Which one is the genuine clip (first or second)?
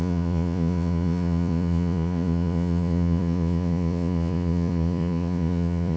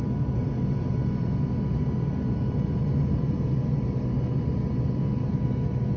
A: second